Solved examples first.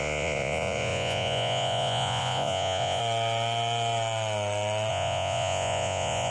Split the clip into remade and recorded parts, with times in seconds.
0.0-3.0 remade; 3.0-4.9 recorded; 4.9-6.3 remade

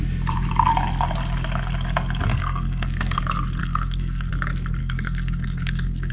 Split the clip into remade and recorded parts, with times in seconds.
0.0-2.3 recorded; 2.3-3.2 remade; 3.2-3.6 recorded; 3.6-4.3 remade; 4.3-4.8 recorded; 4.8-6.1 remade